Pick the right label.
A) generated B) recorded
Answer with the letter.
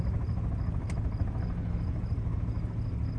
B